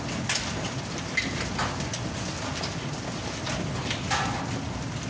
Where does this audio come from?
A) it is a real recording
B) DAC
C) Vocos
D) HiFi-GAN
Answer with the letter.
A